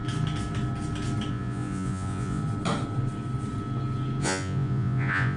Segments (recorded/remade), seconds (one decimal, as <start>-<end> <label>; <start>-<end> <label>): 0.0-1.3 recorded; 1.3-2.4 remade; 2.4-4.2 recorded; 4.2-5.4 remade